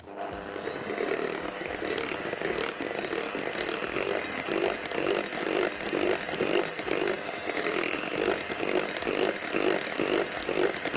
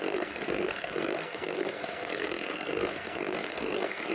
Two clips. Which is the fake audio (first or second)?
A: second